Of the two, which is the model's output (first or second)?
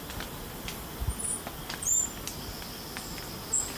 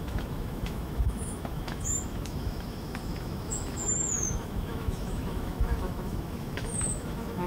second